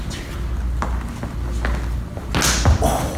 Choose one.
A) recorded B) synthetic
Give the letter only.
A